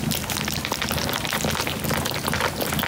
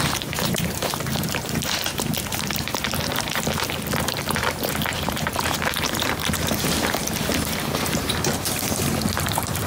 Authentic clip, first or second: first